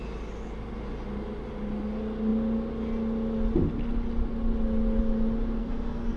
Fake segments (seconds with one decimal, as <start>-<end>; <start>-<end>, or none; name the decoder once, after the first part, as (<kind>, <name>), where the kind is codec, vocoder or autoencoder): 5.6-6.2 (codec, SNAC)